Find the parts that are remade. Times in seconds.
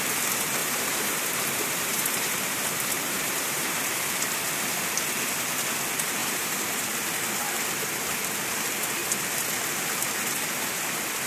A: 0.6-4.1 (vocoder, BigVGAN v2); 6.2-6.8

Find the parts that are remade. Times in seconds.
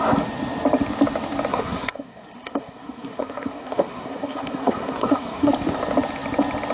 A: 1.5-5.5 (codec, SNAC)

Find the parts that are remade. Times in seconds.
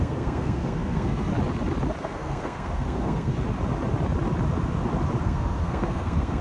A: 0.0-1.3 (codec, SNAC); 2.0-3.3; 5.2-6.4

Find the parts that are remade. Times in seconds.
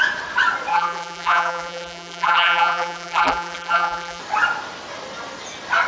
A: 0.7-4.2 (vocoder, BigVGAN v2)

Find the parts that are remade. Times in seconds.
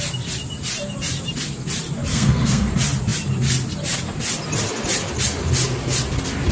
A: 2.1-2.7 (codec, SNAC)